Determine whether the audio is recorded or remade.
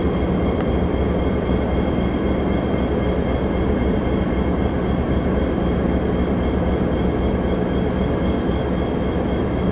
recorded